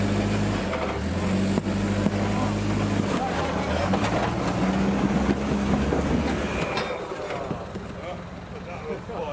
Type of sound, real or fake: real